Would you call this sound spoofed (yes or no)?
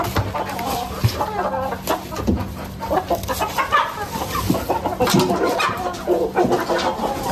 no